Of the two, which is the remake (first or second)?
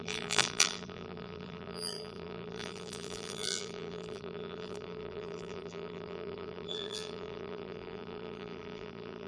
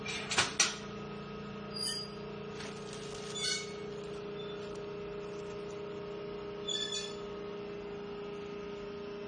first